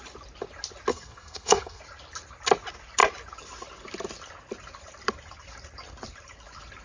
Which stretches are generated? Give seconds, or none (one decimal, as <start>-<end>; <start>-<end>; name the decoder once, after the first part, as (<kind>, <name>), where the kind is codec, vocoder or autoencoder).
0.9-1.8 (codec, SNAC)